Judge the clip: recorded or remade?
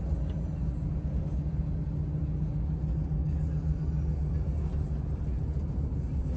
recorded